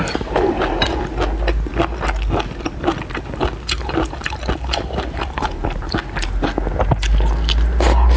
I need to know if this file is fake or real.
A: real